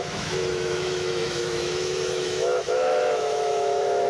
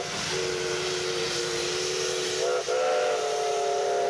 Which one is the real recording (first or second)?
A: second